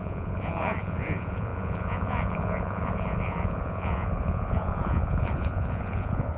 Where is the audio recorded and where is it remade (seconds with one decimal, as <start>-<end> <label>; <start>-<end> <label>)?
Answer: 0.0-6.4 remade